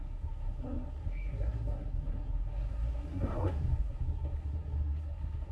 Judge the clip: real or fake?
fake